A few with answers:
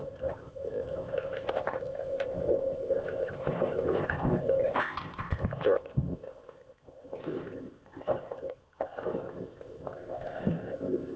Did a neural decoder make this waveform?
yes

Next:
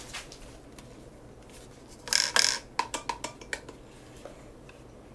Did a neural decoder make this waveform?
no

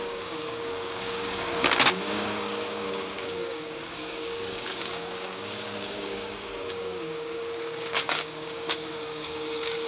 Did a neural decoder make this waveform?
yes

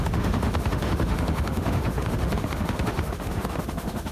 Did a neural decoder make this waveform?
yes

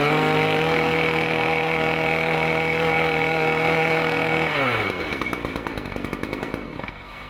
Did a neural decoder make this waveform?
yes